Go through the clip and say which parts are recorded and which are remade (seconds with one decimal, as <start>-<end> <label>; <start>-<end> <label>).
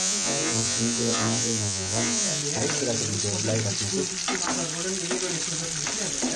0.0-2.4 remade; 2.4-6.4 recorded